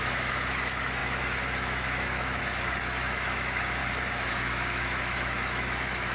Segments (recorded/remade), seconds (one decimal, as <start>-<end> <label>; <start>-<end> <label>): 0.0-3.8 remade; 3.8-4.3 recorded; 4.3-6.1 remade